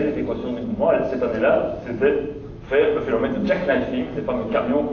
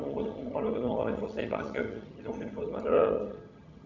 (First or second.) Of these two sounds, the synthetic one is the second